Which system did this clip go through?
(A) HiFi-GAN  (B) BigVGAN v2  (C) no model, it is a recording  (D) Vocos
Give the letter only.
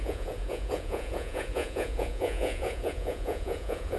D